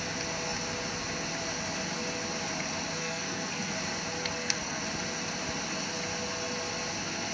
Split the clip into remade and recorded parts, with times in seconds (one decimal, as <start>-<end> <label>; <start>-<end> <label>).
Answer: 0.0-3.0 recorded; 3.0-3.7 remade; 3.7-4.2 recorded; 4.2-4.8 remade; 4.8-7.3 recorded